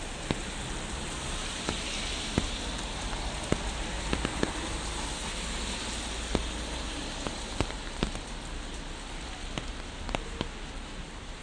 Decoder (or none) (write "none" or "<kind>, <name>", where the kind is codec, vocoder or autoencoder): none